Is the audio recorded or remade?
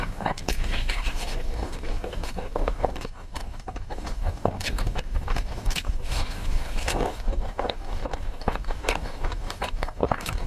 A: remade